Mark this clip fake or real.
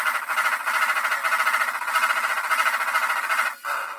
real